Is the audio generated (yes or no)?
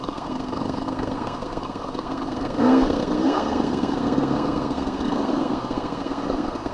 yes